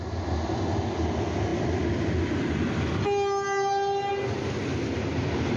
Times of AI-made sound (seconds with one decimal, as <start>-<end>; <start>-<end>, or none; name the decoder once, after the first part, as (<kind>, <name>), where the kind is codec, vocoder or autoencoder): none